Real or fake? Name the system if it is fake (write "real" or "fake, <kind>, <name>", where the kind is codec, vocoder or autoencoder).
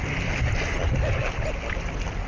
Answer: real